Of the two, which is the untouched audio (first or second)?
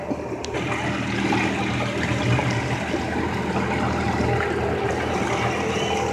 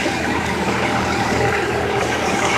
first